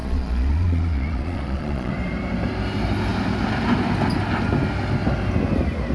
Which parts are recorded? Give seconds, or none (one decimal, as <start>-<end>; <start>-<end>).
1.9-5.9